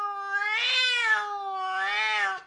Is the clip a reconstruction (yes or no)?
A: no